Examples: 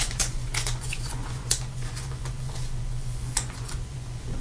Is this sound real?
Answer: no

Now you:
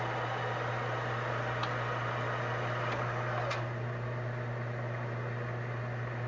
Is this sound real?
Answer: yes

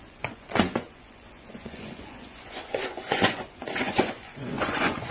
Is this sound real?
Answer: no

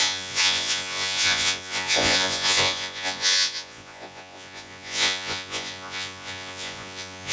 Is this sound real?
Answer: no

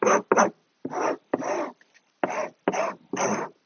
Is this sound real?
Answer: yes